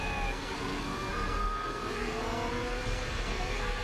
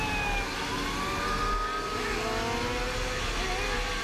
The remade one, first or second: first